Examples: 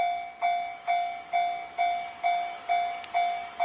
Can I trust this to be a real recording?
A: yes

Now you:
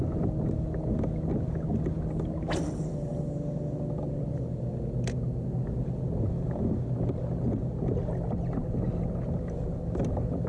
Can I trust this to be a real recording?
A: yes